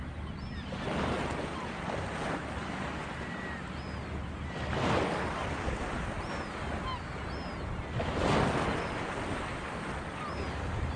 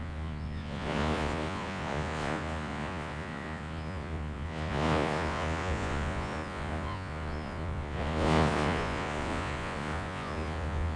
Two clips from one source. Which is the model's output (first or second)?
second